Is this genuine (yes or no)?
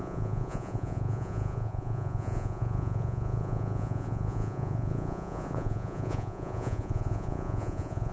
no